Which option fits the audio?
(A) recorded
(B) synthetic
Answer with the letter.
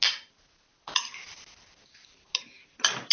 A